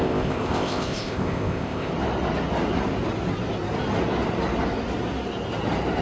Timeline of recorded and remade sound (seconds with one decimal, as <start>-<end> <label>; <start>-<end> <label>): 0.0-1.9 remade; 1.9-6.0 recorded